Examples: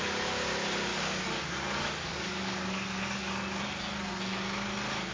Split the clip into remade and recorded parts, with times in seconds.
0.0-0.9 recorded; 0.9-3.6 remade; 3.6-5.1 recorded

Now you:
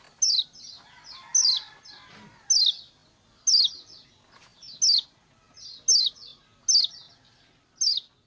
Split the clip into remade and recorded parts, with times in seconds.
0.0-8.3 recorded

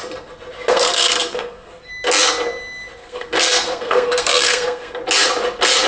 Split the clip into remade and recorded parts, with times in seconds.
0.0-0.7 recorded; 0.7-1.9 remade; 1.9-3.0 recorded; 3.0-5.0 remade; 5.0-5.9 recorded